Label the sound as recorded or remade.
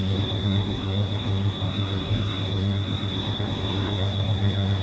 remade